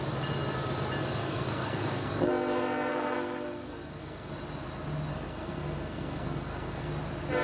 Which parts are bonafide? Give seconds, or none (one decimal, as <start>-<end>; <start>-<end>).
0.0-1.2; 2.3-2.9; 4.3-5.1; 6.9-7.4